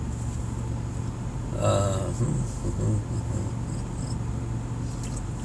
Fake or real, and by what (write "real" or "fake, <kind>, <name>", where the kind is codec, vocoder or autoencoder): real